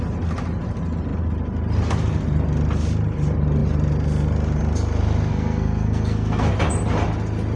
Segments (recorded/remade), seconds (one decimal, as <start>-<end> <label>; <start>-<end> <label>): 0.0-5.3 recorded; 5.3-6.5 remade; 6.5-7.6 recorded